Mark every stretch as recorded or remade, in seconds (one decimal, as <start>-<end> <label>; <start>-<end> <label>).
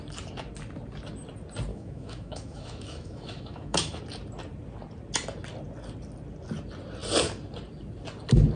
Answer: 0.0-1.7 recorded; 1.7-4.0 remade; 4.0-8.6 recorded